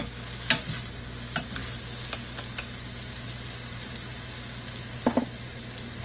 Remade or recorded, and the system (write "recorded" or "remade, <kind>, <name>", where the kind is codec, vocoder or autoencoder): recorded